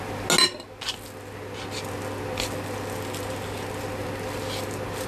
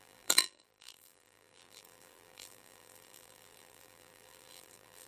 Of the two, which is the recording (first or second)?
first